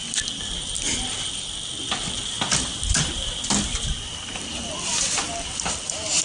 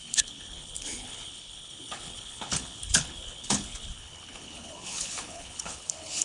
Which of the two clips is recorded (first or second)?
first